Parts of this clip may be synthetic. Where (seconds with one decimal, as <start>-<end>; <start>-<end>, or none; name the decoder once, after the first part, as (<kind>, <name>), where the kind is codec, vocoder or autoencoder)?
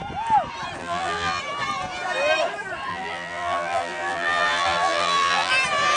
0.8-1.4 (vocoder, BigVGAN v2); 2.9-5.5